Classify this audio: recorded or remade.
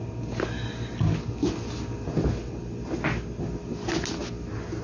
recorded